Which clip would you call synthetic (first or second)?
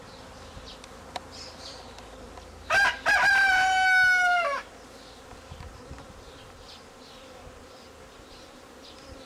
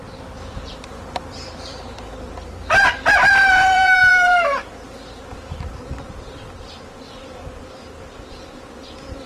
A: second